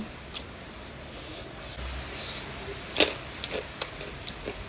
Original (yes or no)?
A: yes